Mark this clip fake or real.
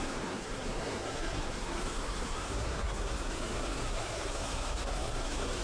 fake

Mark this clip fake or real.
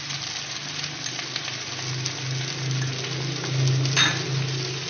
real